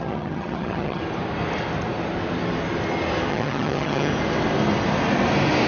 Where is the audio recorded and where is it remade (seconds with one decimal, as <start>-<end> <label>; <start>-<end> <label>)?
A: 0.0-1.0 remade; 1.0-3.3 recorded; 3.3-4.1 remade; 4.1-5.7 recorded